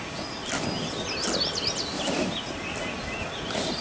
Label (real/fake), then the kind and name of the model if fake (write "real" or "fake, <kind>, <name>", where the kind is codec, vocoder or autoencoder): real